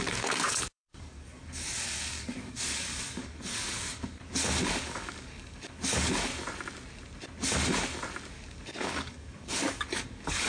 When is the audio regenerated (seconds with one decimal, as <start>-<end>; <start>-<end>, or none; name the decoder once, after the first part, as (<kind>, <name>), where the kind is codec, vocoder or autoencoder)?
0.0-6.3 (codec, DAC); 8.3-10.5